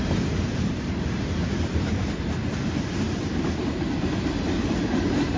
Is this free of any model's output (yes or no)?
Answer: yes